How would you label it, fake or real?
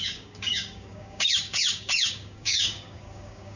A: fake